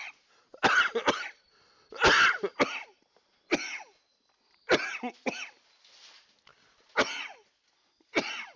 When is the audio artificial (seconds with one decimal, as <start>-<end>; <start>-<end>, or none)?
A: none